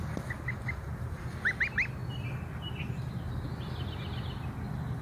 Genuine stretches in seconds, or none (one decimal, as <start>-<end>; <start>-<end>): 0.0-5.0